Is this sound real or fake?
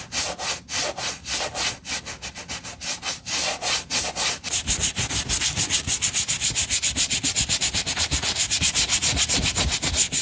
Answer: real